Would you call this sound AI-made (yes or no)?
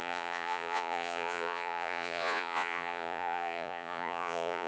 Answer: yes